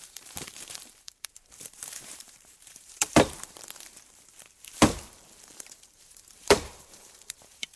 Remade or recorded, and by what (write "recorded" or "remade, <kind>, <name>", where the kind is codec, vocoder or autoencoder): remade, vocoder, BigVGAN v2